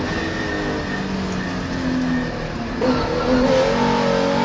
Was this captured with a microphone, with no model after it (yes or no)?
yes